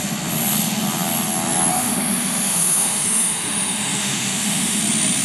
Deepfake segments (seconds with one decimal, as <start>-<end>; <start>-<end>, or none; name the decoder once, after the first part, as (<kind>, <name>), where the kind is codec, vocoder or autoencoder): 1.7-4.8 (autoencoder, DAC-VAE)